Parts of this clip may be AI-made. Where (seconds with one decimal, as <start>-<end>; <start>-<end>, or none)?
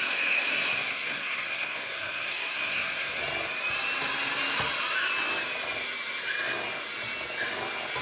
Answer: 0.0-3.2